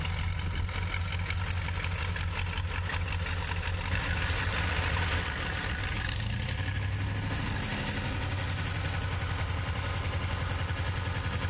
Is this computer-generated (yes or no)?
no